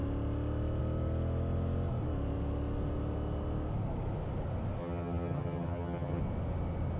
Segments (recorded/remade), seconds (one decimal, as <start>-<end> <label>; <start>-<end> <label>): 0.0-4.8 recorded; 4.8-6.2 remade; 6.2-7.0 recorded